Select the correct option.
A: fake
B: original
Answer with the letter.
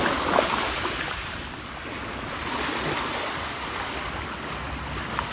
B